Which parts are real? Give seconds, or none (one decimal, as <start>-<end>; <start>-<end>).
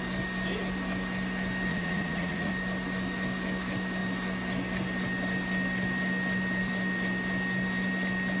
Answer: 0.0-1.7; 2.5-8.4